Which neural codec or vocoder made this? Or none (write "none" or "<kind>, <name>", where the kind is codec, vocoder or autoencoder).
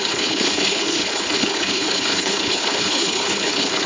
codec, HILCodec